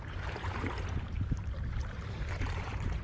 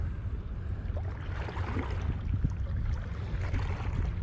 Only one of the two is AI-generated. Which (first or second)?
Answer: first